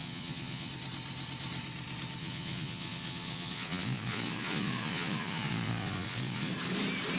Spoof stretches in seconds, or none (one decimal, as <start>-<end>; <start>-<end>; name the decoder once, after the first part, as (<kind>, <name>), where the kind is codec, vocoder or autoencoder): 0.0-0.7 (vocoder, Vocos); 2.2-6.5